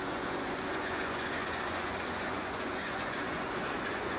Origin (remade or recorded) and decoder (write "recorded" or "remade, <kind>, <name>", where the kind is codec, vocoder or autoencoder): remade, vocoder, Vocos